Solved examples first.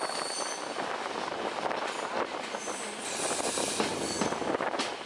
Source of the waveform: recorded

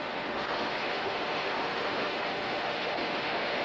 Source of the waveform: remade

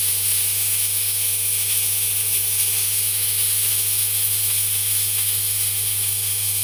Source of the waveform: remade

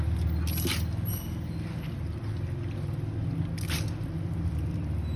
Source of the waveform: recorded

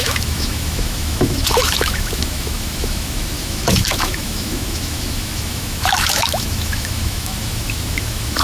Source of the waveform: remade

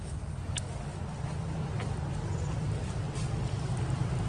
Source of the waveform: recorded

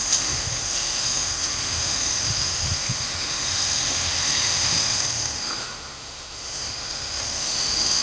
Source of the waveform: remade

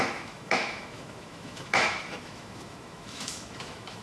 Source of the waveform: remade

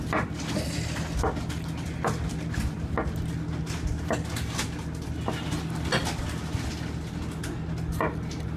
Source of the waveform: recorded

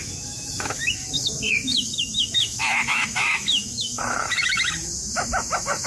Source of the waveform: remade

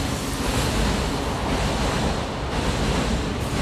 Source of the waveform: recorded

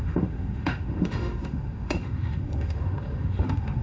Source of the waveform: remade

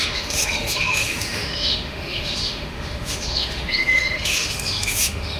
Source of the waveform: remade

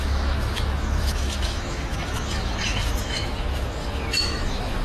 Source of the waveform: remade